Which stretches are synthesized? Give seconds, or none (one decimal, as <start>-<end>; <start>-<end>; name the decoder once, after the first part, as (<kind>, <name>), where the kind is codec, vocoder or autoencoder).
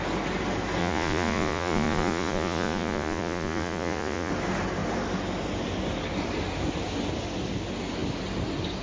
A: 0.8-4.3 (vocoder, Vocos)